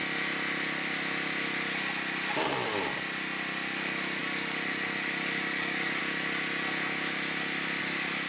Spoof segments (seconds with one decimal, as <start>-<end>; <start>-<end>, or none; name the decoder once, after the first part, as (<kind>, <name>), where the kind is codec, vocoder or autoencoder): 4.2-6.0 (codec, DAC); 7.8-8.3